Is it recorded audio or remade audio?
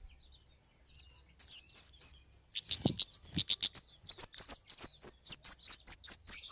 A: recorded